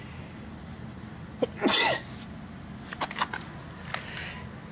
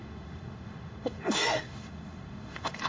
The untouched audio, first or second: first